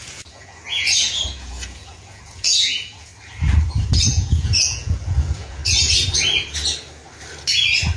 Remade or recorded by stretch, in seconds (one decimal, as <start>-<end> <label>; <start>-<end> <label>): 0.0-3.1 remade; 3.1-4.1 recorded; 4.1-5.6 remade; 5.6-8.0 recorded